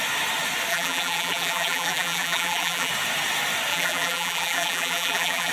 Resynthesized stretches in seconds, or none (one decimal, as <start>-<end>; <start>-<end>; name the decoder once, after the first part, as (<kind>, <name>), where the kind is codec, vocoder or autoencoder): 0.7-2.9 (vocoder, BigVGAN v2); 3.7-5.5